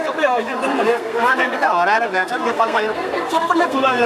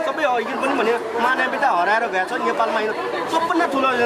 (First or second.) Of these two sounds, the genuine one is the second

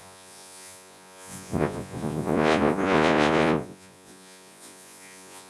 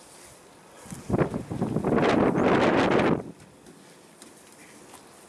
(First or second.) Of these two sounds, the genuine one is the second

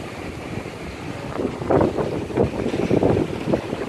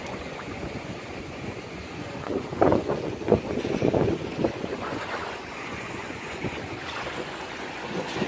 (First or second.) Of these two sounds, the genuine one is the first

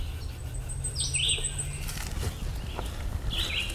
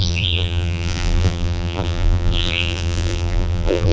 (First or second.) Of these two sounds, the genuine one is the first